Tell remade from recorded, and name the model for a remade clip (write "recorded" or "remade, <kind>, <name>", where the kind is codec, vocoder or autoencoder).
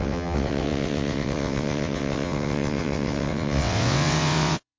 remade, vocoder, WaveNeXt